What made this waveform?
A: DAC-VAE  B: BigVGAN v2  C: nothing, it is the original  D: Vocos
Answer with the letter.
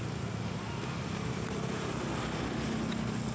C